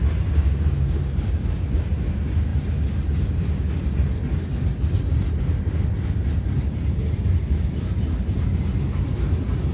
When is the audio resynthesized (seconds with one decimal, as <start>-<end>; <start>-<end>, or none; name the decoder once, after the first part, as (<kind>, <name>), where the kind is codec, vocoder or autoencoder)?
none